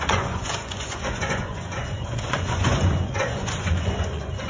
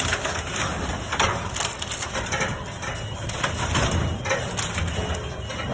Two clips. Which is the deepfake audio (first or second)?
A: first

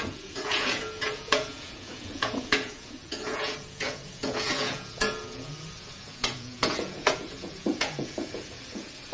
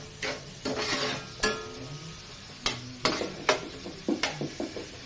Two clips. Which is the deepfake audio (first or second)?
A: first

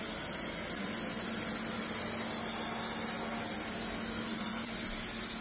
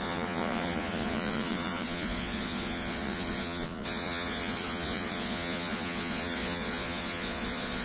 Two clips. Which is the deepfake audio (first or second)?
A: second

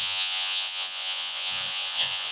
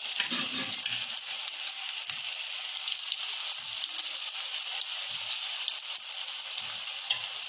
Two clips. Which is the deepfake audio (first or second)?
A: first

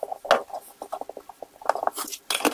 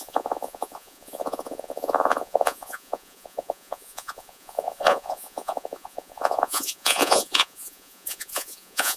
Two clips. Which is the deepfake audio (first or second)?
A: second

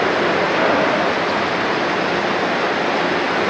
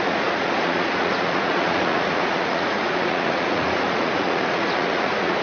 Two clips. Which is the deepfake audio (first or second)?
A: second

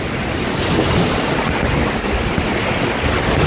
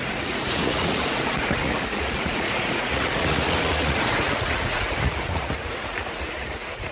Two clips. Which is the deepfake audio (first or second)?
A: second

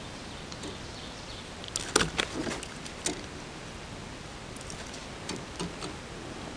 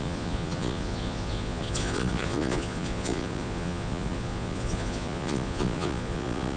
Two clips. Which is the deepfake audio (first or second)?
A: second